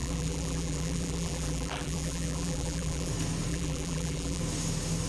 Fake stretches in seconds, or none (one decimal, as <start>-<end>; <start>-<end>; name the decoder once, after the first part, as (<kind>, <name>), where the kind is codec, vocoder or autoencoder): 0.0-3.1 (vocoder, BigVGAN v2); 3.5-4.4